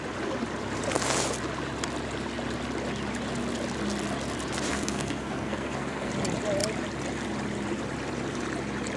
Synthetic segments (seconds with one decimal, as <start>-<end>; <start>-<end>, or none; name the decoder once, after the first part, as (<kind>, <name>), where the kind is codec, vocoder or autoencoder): 4.7-6.1 (codec, SNAC)